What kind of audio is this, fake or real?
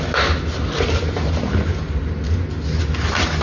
real